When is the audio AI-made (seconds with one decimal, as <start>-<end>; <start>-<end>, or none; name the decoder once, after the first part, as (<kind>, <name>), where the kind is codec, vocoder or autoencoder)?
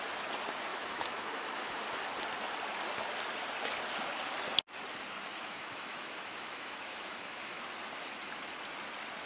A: 0.7-1.8 (autoencoder, DAC-VAE); 5.3-7.6